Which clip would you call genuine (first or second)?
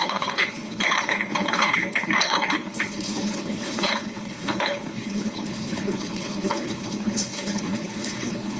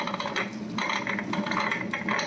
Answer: second